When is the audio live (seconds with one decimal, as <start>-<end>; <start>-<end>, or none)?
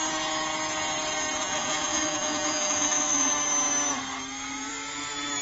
0.0-1.4; 3.3-5.4